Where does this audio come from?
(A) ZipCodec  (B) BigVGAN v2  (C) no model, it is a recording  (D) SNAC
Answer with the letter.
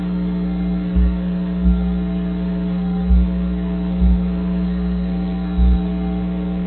D